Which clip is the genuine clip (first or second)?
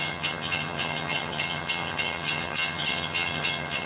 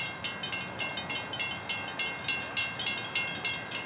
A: second